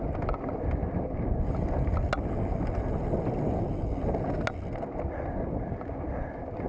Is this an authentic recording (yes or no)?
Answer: yes